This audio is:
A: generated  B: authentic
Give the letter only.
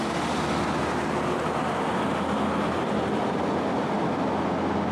B